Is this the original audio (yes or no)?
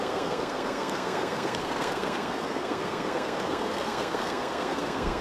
no